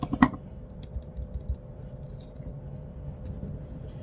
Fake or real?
real